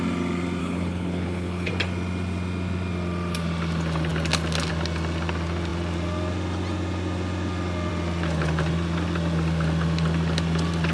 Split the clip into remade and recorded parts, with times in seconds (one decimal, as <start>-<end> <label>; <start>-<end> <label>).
0.0-0.6 recorded; 0.6-1.7 remade; 1.7-10.9 recorded